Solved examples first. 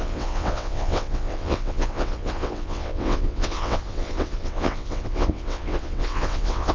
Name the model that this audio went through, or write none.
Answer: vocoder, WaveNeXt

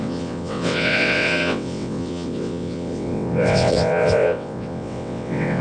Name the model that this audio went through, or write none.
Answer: vocoder, WaveNeXt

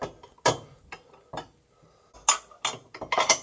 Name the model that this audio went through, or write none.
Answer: none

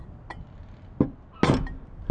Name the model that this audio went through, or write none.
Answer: none